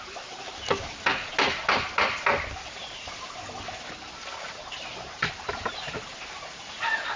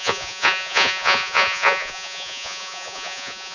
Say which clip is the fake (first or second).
second